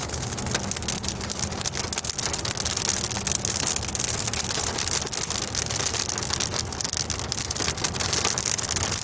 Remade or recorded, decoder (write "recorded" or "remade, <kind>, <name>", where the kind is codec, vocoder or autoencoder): recorded